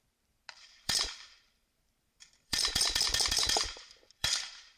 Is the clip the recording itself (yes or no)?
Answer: no